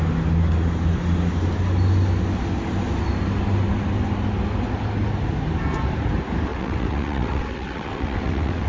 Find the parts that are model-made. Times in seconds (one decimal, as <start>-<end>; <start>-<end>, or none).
6.5-8.7

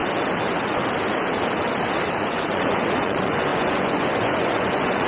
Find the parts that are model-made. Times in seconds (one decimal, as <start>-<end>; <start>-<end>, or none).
2.2-5.1

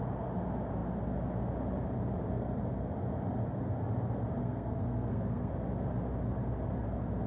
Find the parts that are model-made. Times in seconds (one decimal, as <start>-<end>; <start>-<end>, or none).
4.4-5.5

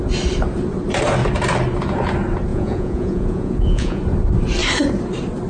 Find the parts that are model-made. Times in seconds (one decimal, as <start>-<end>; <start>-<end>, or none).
2.5-4.0

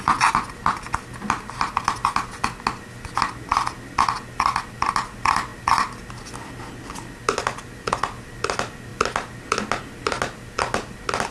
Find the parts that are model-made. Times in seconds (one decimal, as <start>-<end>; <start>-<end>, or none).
none

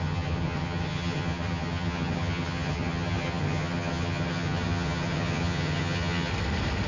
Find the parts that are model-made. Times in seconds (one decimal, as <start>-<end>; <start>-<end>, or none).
0.0-6.3

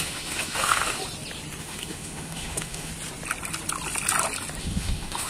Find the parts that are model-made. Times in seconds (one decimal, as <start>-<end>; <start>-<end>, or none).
0.0-1.0; 1.6-2.9; 4.6-5.3

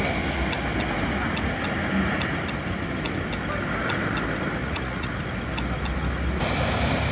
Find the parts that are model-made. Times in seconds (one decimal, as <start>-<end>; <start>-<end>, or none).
4.6-5.1